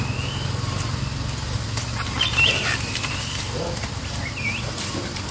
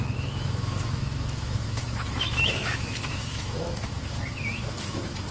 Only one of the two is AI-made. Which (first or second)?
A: second